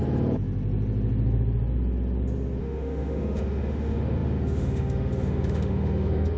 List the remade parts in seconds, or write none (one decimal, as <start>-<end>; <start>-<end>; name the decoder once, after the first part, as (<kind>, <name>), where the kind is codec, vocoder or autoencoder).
2.6-6.4 (autoencoder, DAC-VAE)